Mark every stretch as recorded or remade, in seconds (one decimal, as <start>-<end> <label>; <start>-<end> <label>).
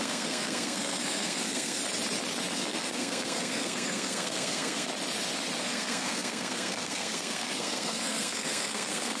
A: 0.0-1.8 remade; 1.8-2.5 recorded; 2.5-4.9 remade; 4.9-5.6 recorded; 5.6-9.2 remade